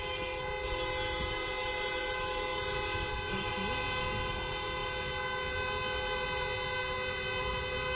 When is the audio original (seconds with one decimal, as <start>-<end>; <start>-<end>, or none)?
0.0-8.0